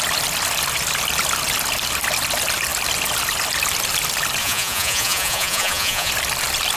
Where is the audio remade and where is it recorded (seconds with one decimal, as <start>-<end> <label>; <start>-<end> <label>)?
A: 0.0-4.4 recorded; 4.4-6.1 remade; 6.1-6.8 recorded